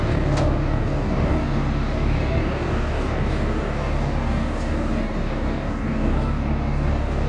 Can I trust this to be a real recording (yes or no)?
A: no